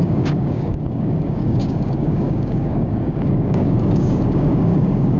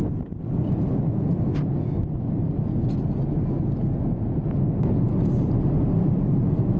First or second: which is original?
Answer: second